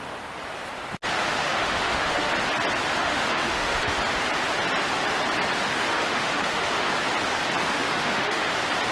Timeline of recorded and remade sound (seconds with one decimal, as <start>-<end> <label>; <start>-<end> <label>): 0.0-1.2 recorded; 1.2-2.3 remade; 2.3-3.0 recorded; 3.0-4.0 remade; 4.0-5.6 recorded; 5.6-6.9 remade; 6.9-7.6 recorded; 7.6-8.5 remade; 8.5-8.9 recorded